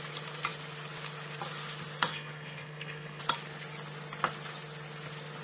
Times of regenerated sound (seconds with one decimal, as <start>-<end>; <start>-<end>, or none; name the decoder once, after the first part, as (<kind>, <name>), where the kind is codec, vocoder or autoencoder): 2.1-3.2 (codec, SNAC)